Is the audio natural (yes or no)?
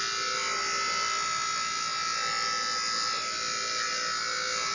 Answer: yes